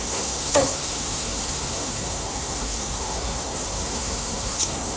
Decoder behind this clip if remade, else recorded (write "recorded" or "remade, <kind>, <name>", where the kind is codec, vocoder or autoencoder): remade, codec, SNAC